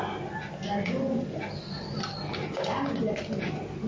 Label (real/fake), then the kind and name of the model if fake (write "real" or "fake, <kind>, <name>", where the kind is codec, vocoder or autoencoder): real